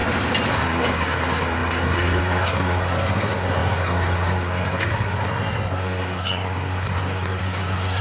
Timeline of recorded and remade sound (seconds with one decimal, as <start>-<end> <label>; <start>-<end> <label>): 0.0-0.5 recorded; 0.5-8.0 remade